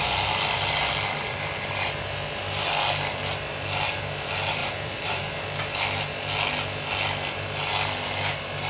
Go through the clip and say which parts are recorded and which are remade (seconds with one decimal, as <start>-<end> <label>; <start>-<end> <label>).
0.0-4.6 recorded; 4.6-5.2 remade; 5.2-8.7 recorded